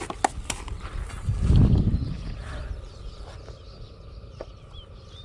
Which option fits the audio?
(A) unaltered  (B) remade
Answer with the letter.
A